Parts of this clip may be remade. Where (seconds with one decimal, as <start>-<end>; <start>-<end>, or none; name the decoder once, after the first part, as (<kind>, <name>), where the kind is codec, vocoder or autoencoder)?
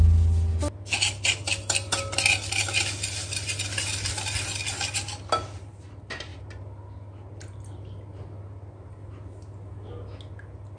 none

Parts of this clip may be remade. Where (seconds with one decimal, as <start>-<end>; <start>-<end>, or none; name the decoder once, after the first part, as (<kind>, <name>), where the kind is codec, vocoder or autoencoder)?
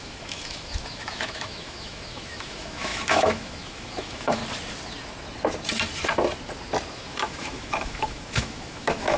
0.0-4.4 (autoencoder, DAC-VAE); 6.9-9.2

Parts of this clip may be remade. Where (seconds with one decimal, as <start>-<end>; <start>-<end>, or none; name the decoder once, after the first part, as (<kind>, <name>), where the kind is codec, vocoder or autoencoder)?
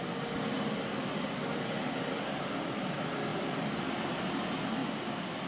1.0-1.7 (vocoder, BigVGAN v2); 3.3-4.1; 4.8-5.5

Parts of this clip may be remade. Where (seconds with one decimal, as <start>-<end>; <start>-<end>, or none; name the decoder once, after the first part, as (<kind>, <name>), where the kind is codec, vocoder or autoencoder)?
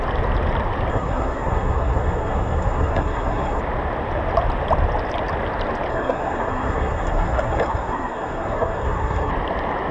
0.9-3.6 (codec, SNAC); 5.9-9.3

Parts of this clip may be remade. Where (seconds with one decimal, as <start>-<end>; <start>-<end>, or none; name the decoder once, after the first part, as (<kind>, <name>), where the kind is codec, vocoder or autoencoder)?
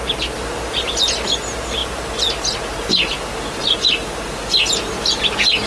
none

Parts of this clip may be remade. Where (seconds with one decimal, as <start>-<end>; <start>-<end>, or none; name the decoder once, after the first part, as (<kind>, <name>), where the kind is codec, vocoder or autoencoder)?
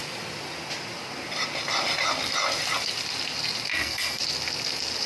3.7-4.2 (codec, SNAC)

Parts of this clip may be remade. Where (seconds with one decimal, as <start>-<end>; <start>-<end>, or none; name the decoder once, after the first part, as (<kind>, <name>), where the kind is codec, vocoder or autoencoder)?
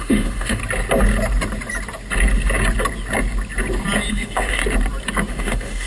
0.0-0.6 (autoencoder, DAC-VAE); 4.1-4.6; 5.3-5.9